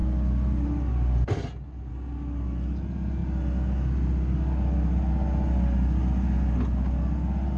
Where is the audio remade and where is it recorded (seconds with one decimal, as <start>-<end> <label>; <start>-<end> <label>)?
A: 0.0-7.6 recorded